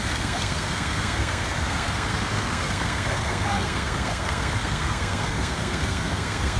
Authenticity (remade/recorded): remade